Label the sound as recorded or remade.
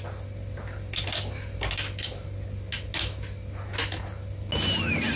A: recorded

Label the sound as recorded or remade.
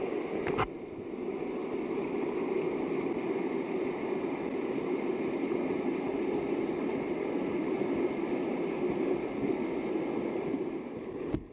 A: recorded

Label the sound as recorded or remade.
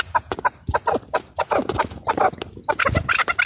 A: recorded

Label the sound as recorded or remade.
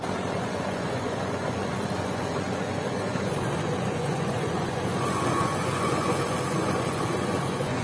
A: remade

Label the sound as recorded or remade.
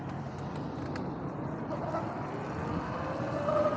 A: recorded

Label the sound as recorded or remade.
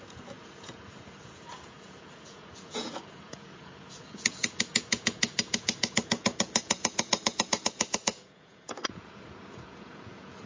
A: remade